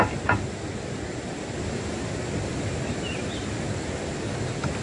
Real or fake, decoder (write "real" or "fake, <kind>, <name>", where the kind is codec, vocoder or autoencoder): real